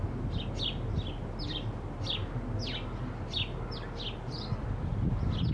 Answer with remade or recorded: recorded